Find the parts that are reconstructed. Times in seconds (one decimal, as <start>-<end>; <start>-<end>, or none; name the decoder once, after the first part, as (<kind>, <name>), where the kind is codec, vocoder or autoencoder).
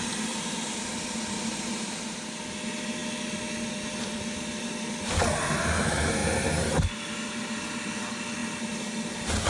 none